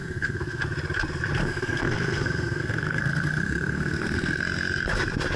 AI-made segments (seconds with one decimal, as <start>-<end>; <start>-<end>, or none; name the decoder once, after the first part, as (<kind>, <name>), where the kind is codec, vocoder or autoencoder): 0.0-0.6 (codec, SNAC); 1.4-4.4